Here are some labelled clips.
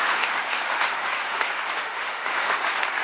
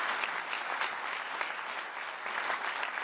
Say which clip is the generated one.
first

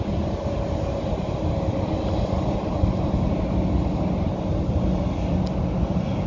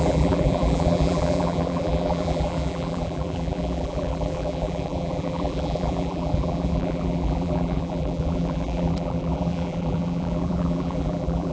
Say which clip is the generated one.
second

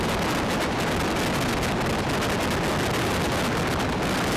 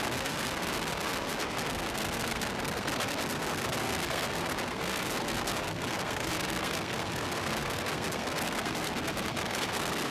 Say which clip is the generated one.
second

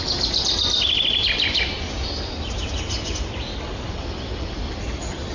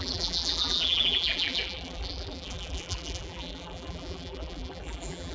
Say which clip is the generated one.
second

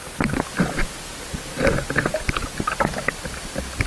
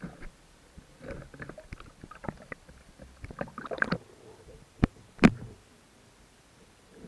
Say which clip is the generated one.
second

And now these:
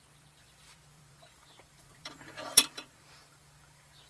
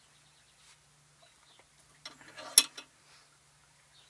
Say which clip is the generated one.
first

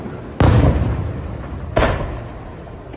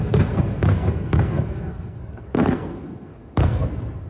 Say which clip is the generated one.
second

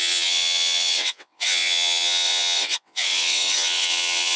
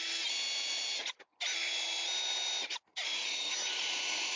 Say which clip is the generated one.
first